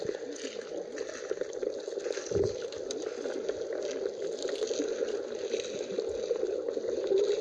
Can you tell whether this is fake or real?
real